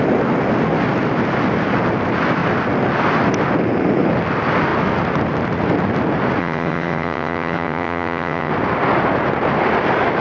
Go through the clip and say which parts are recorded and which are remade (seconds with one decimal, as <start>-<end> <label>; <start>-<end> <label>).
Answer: 0.0-6.4 recorded; 6.4-8.5 remade; 8.5-10.2 recorded